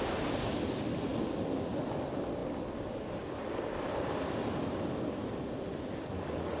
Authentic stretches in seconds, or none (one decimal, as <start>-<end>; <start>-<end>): 0.0-6.6